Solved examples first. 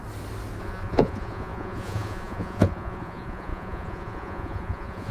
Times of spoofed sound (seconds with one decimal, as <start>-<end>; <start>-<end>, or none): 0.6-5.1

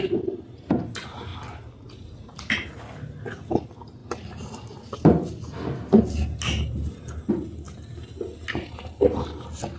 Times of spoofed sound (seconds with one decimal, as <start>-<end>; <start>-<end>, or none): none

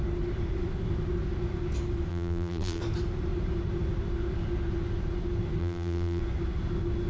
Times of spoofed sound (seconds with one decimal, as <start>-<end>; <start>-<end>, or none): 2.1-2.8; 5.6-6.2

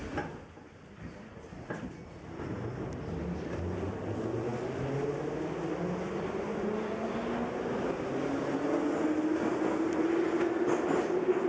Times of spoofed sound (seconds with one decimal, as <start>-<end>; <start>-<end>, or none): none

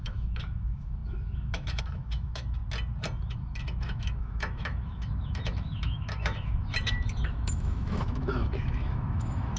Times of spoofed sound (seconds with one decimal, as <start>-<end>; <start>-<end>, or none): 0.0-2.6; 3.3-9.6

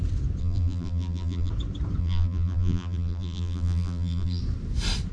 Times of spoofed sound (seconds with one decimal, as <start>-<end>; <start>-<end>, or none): 0.4-1.5; 2.0-4.4

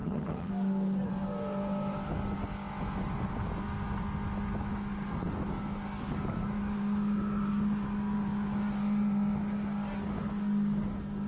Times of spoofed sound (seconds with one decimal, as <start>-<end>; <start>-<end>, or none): 0.0-0.5